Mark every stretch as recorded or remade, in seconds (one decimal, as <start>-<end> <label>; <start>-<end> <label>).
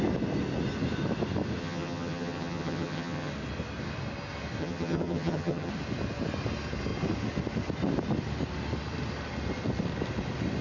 0.0-1.6 recorded; 1.6-3.3 remade; 3.3-4.6 recorded; 4.6-5.7 remade; 5.7-10.6 recorded